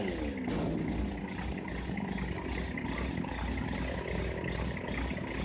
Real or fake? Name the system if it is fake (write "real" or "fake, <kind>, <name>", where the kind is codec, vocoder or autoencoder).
real